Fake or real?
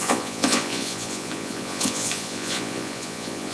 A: fake